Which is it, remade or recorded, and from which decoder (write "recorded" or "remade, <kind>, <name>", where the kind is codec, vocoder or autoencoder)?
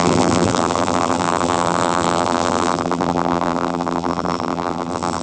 remade, vocoder, BigVGAN v2